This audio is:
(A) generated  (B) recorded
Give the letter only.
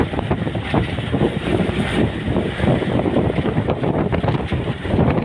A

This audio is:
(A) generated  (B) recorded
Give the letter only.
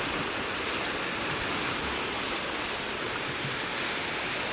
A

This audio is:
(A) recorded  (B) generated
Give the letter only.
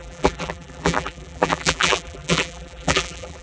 B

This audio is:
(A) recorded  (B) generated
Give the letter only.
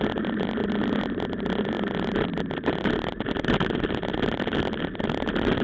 A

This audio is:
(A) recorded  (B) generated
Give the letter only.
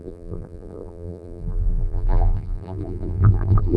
B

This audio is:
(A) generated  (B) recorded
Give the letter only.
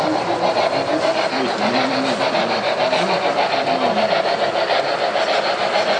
B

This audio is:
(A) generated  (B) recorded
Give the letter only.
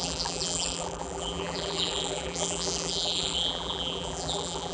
A